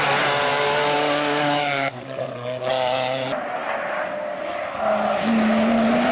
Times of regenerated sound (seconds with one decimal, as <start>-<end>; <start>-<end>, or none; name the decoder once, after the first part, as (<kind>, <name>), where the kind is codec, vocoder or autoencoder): 0.5-2.7 (codec, DAC)